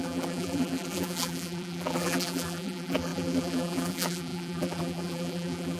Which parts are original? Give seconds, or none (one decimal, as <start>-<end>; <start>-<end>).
none